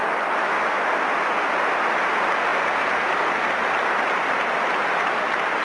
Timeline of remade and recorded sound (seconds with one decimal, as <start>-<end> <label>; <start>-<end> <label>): 0.0-5.6 recorded